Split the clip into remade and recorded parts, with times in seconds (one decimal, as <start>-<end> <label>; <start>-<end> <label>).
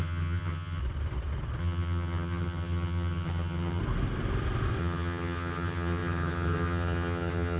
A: 0.0-0.8 remade; 0.8-1.6 recorded; 1.6-3.8 remade; 3.8-4.8 recorded; 4.8-7.6 remade